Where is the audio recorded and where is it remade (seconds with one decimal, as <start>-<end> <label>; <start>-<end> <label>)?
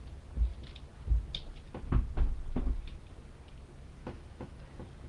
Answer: 0.0-4.0 recorded; 4.0-4.6 remade; 4.6-5.1 recorded